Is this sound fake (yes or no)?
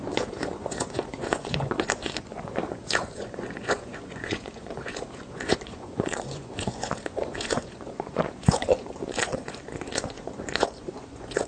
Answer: yes